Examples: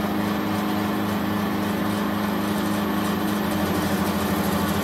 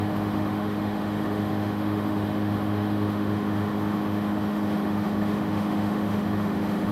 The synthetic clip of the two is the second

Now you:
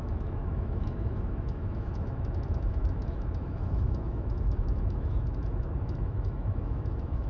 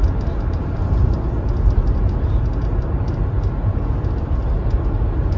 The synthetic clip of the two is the first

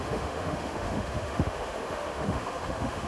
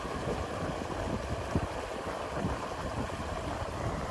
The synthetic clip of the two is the first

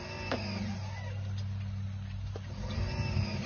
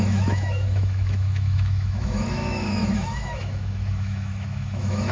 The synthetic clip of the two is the second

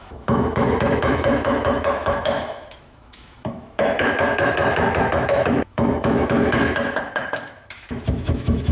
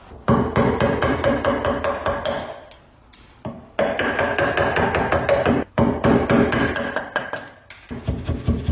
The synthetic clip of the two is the first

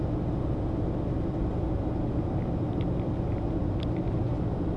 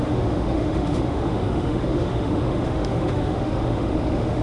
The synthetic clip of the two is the second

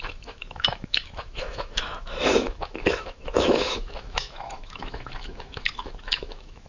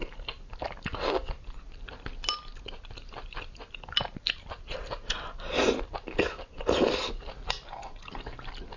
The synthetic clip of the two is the first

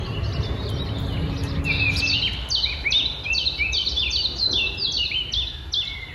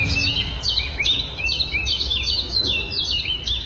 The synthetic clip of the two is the second